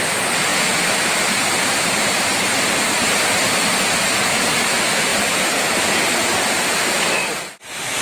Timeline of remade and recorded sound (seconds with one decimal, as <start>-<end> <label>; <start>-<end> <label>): 0.0-8.0 recorded